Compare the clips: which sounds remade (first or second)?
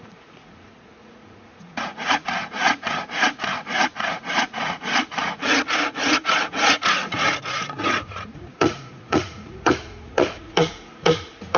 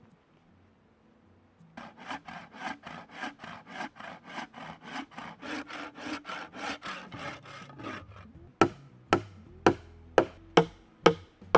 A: first